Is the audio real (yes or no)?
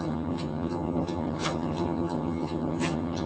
no